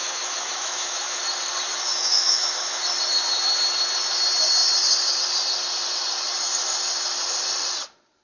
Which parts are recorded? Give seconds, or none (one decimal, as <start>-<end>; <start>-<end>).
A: 1.2-1.9; 2.8-8.2